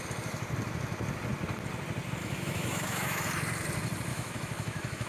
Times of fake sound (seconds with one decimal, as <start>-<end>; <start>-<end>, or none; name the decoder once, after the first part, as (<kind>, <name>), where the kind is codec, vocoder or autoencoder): 2.2-3.2 (autoencoder, DAC-VAE); 4.1-5.1